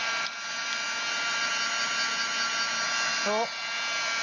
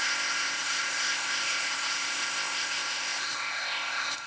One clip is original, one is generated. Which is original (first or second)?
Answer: first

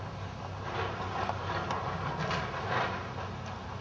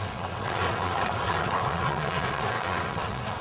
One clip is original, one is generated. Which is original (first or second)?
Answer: first